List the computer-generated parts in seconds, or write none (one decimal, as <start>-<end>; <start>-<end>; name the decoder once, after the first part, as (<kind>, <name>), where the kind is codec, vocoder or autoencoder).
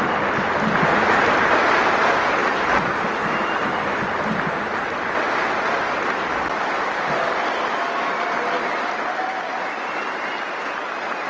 2.4-2.9 (vocoder, BigVGAN v2)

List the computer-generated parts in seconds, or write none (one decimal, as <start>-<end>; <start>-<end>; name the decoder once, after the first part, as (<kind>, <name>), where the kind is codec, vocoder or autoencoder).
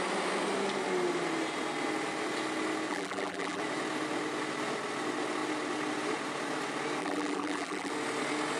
2.9-3.6 (vocoder, BigVGAN v2); 7.0-7.9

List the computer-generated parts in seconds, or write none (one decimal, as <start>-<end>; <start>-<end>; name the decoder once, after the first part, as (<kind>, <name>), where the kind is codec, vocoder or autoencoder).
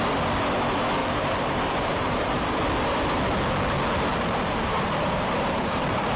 1.0-2.6 (vocoder, BigVGAN v2); 4.1-6.2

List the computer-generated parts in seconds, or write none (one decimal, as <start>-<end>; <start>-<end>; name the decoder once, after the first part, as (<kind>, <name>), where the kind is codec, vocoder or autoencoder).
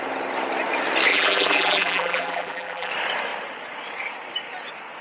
1.1-2.9 (vocoder, BigVGAN v2)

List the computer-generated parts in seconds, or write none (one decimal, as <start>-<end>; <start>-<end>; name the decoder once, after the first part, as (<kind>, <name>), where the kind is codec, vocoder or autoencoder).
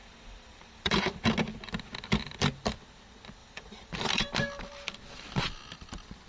0.0-1.0 (vocoder, BigVGAN v2); 3.4-4.3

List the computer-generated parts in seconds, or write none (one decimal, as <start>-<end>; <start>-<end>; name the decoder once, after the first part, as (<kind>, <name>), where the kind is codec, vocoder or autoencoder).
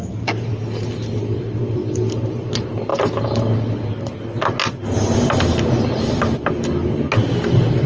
0.0-0.5 (vocoder, BigVGAN v2); 1.4-2.9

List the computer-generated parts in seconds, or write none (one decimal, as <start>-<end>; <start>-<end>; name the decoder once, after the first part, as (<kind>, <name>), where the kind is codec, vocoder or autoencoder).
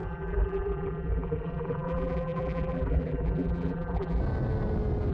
0.0-4.2 (vocoder, BigVGAN v2)